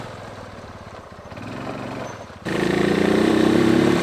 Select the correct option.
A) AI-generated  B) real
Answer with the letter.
A